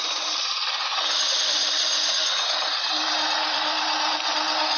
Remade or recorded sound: recorded